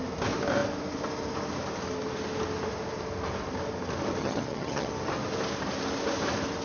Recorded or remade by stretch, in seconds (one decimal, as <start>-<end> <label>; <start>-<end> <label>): 0.0-4.2 recorded; 4.2-4.9 remade; 4.9-6.6 recorded